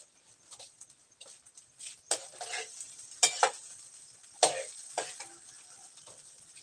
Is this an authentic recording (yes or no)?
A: yes